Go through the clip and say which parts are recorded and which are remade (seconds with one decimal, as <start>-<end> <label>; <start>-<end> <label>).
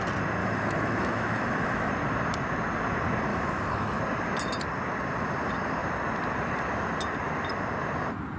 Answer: 0.0-0.4 recorded; 0.4-1.9 remade; 1.9-3.3 recorded; 3.3-4.0 remade; 4.0-8.4 recorded